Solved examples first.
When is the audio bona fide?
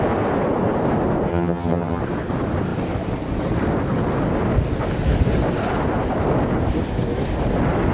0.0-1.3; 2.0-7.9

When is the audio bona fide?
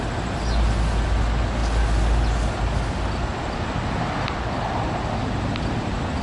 0.0-6.2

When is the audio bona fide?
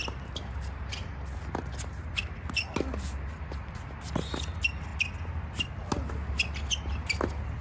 0.0-7.6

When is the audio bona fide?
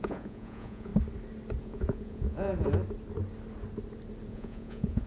0.9-1.6; 2.5-4.3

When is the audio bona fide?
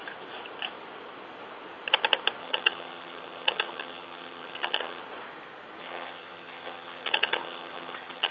0.0-2.4; 5.0-5.8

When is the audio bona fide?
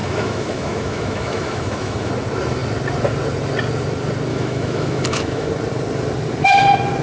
2.1-4.3; 5.5-7.0